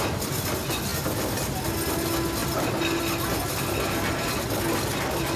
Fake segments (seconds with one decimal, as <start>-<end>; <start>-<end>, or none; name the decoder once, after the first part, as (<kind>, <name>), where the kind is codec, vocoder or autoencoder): none